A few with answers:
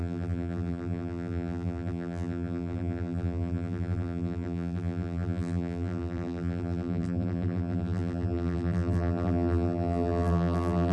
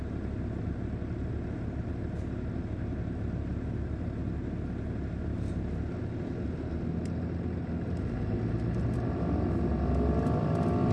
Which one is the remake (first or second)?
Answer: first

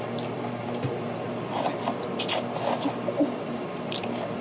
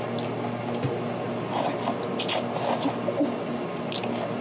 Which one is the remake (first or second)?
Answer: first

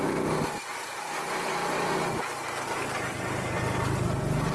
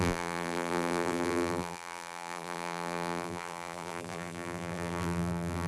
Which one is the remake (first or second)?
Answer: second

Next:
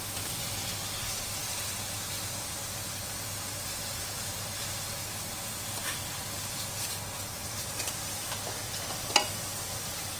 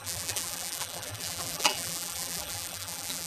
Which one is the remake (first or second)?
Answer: second